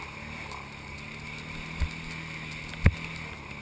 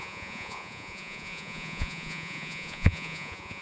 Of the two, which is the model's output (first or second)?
second